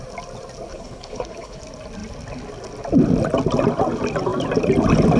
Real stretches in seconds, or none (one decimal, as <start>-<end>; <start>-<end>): 0.0-0.7; 1.6-5.2